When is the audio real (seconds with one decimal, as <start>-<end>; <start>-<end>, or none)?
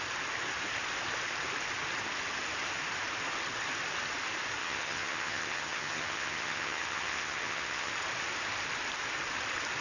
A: 0.0-4.6; 7.9-9.8